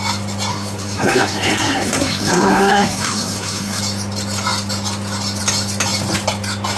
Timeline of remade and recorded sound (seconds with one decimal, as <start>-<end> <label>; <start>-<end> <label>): 0.0-0.5 recorded; 0.5-3.8 remade; 3.8-6.8 recorded